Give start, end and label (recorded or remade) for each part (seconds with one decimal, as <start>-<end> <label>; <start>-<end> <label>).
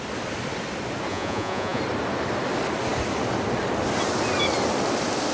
0.0-1.1 recorded; 1.1-1.8 remade; 1.8-5.3 recorded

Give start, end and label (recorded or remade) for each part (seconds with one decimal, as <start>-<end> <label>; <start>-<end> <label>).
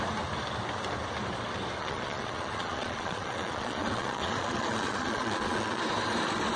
0.0-1.8 recorded; 1.8-5.8 remade; 5.8-6.6 recorded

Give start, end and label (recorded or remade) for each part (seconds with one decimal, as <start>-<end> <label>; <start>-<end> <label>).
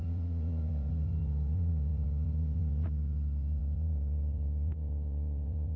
0.0-5.8 remade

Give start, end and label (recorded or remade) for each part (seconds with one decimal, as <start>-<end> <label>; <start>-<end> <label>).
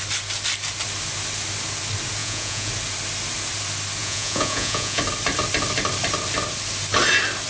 0.0-2.2 recorded; 2.2-2.7 remade; 2.7-4.0 recorded; 4.0-5.0 remade; 5.0-7.5 recorded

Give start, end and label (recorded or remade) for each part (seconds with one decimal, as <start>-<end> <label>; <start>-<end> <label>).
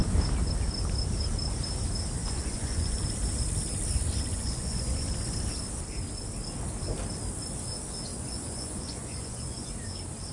0.0-2.2 recorded; 2.2-3.0 remade; 3.0-4.3 recorded; 4.3-5.1 remade; 5.1-8.1 recorded; 8.1-9.7 remade; 9.7-10.3 recorded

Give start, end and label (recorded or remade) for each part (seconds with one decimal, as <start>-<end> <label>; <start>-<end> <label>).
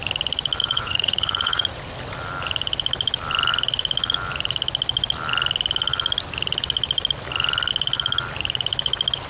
0.0-0.6 recorded; 0.6-1.8 remade; 1.8-9.3 recorded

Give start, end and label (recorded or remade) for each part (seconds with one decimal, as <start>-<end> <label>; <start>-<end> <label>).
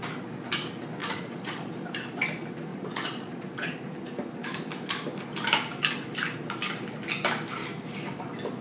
0.0-1.0 recorded; 1.0-1.7 remade; 1.7-2.7 recorded; 2.7-3.7 remade; 3.7-8.6 recorded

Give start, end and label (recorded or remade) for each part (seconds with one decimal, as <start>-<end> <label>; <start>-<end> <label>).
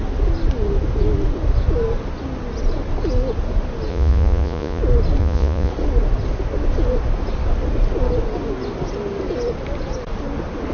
0.0-3.9 recorded; 3.9-4.8 remade; 4.8-5.2 recorded; 5.2-5.7 remade; 5.7-10.7 recorded